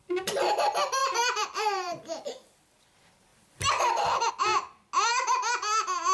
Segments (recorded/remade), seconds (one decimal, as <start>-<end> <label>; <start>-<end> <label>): 0.0-1.0 recorded; 1.0-2.9 remade; 2.9-3.3 recorded; 3.3-4.3 remade; 4.3-6.1 recorded